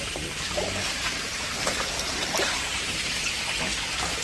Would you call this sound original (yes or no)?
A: no